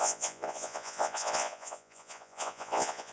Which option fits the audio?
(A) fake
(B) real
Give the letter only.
A